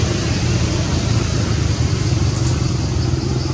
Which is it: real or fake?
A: real